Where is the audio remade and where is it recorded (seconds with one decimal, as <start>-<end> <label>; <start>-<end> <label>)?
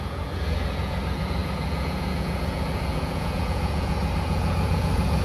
0.0-5.2 remade